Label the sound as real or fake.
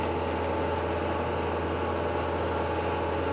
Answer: real